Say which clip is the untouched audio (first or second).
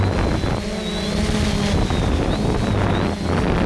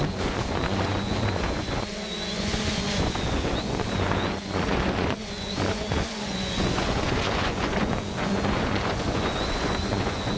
first